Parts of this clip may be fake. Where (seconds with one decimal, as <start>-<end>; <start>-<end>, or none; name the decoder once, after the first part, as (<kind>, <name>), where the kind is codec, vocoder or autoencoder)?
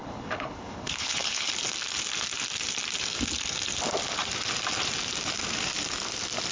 0.0-1.5 (codec, HILCodec)